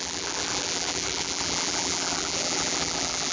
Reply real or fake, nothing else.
fake